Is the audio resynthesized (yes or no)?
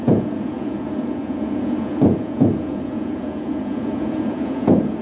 yes